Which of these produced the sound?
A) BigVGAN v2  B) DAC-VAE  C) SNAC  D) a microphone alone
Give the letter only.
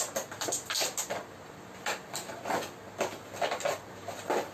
D